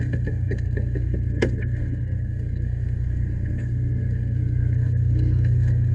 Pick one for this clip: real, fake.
fake